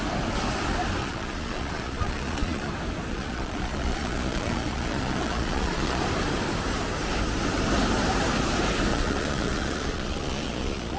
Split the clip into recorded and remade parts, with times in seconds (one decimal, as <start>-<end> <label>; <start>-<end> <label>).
0.0-1.0 recorded; 1.0-2.7 remade; 2.7-3.1 recorded; 3.1-6.0 remade; 6.0-8.9 recorded; 8.9-11.0 remade